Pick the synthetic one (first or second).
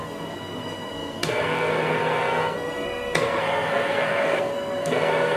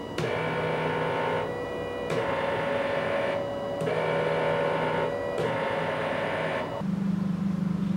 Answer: first